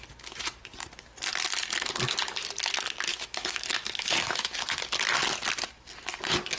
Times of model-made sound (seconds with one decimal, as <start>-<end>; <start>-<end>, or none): 3.1-4.6